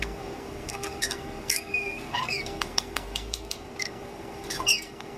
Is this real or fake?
fake